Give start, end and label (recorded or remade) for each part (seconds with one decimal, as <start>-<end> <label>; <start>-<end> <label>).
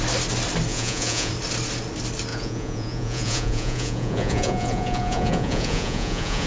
0.0-0.7 recorded; 0.7-1.3 remade; 1.3-2.3 recorded; 2.3-6.5 remade